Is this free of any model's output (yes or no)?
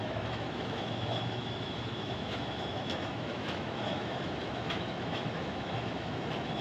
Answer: no